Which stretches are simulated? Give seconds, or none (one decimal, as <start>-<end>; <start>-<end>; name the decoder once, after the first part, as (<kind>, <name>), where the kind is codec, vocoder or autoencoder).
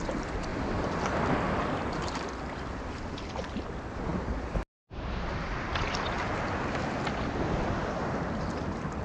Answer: 0.5-2.9 (vocoder, BigVGAN v2)